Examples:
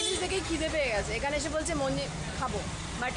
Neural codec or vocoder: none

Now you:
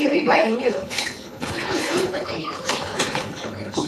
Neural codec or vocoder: codec, HILCodec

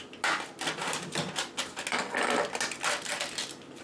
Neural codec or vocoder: none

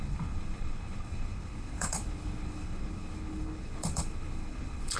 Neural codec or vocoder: codec, HILCodec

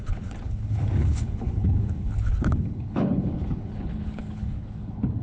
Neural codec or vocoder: codec, HILCodec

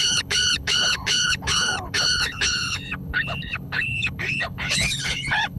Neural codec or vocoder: codec, HILCodec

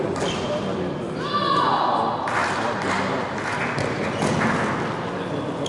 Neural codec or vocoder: none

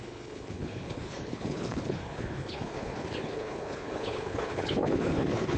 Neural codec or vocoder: codec, HILCodec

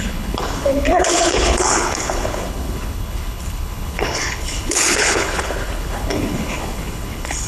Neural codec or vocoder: codec, HILCodec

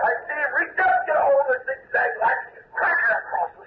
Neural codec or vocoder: none